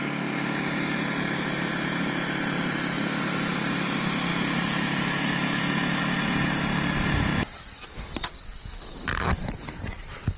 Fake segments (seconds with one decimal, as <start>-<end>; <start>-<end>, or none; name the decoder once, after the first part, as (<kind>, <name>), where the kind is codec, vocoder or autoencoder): none